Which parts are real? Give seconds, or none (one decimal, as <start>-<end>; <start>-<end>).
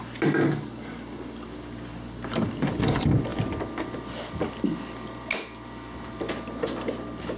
0.0-7.4